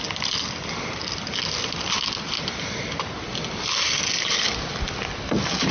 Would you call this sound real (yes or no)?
yes